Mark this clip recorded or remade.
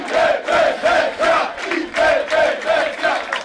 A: recorded